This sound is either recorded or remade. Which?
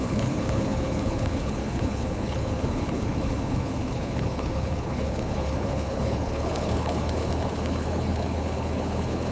remade